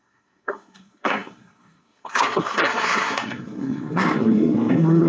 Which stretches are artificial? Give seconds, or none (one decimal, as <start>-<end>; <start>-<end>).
0.0-5.1